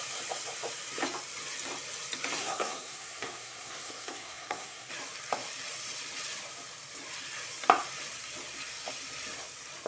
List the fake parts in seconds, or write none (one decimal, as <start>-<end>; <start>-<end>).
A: 2.4-4.9